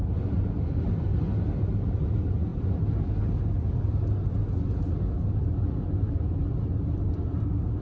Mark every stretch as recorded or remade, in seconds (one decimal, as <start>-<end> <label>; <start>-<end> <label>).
0.0-7.8 recorded